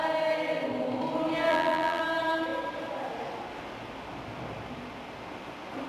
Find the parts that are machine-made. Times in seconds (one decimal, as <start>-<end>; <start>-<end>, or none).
1.5-2.0